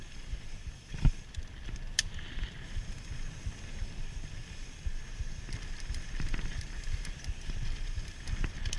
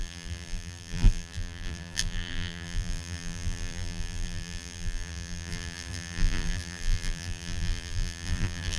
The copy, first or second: second